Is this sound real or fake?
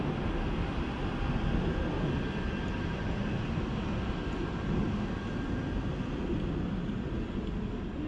real